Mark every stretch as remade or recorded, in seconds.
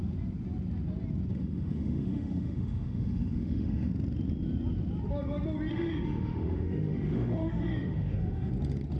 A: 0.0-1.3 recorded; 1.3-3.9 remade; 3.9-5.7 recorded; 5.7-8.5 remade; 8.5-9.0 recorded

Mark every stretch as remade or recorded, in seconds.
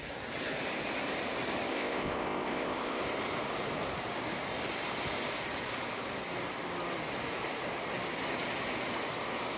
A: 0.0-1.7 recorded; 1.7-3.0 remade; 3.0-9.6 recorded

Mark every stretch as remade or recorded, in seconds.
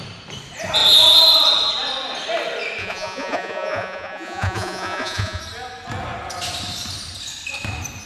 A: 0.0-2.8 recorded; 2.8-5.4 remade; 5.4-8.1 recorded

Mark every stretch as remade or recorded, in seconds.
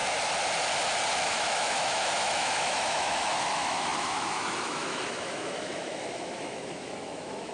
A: 0.0-1.3 recorded; 1.3-7.5 remade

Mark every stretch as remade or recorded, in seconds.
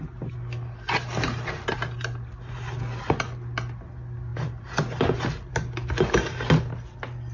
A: 0.0-7.3 recorded